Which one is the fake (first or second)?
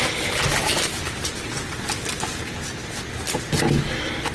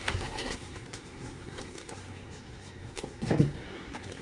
second